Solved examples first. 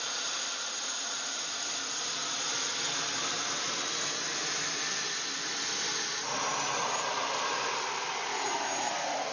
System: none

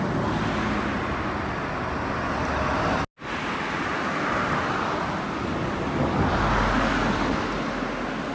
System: none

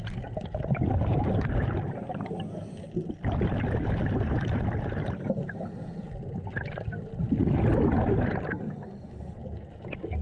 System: none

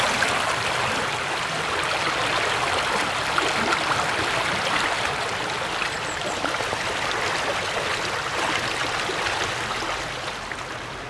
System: none